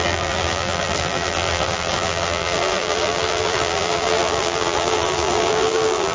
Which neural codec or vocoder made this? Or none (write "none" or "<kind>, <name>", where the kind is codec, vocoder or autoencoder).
vocoder, BigVGAN v2